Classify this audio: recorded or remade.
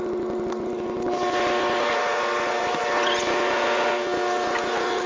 recorded